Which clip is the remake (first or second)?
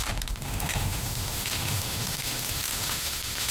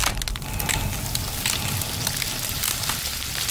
first